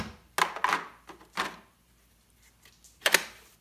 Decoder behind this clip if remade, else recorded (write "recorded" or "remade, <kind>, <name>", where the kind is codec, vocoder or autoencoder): recorded